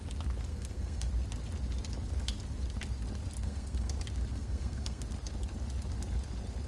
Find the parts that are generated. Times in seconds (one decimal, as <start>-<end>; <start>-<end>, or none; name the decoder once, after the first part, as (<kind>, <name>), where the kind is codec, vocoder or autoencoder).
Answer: 0.5-1.1 (codec, SNAC); 3.4-3.9; 4.3-5.0